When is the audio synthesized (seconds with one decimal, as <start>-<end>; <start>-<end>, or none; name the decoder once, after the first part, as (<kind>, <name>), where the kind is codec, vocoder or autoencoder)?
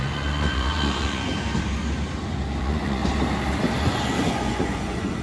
0.0-1.3 (vocoder, Vocos); 2.6-3.0; 3.8-5.2